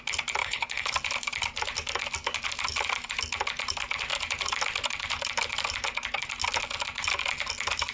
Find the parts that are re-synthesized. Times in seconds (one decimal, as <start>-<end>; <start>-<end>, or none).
0.4-0.9